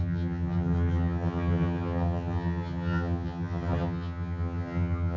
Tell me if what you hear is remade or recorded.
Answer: remade